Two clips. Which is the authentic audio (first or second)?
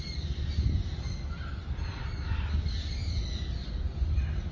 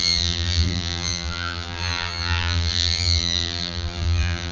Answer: first